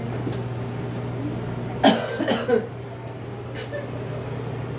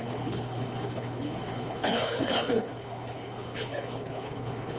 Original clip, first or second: first